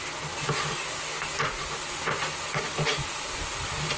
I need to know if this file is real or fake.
real